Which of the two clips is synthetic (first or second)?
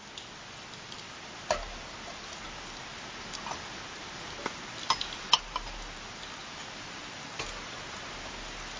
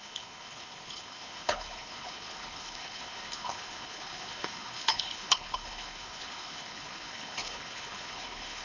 second